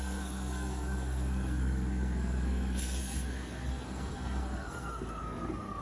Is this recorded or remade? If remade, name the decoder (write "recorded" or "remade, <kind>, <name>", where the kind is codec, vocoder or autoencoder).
remade, codec, SNAC